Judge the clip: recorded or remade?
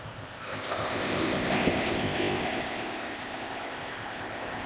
remade